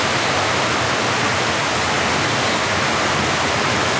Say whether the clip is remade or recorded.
recorded